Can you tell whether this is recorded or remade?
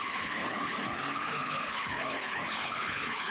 remade